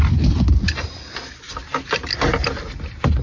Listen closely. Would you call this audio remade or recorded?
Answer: recorded